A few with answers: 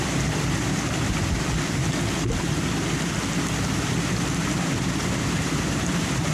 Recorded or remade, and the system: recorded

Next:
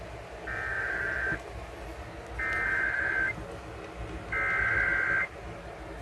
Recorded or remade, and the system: recorded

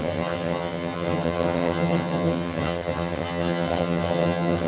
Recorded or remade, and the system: remade, vocoder, HiFi-GAN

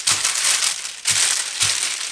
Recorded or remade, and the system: recorded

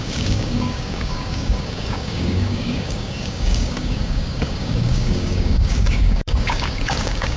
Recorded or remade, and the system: remade, codec, DAC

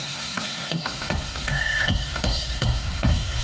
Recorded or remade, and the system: remade, codec, SNAC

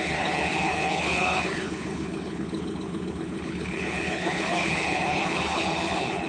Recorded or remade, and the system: remade, codec, HILCodec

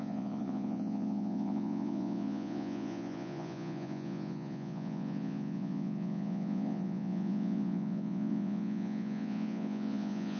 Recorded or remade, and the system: remade, vocoder, Vocos